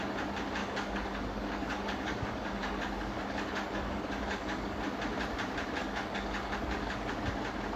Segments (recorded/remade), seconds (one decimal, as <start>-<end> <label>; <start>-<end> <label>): 0.0-0.6 recorded; 0.6-4.8 remade; 4.8-5.8 recorded; 5.8-7.1 remade; 7.1-7.8 recorded